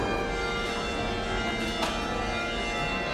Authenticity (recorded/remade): recorded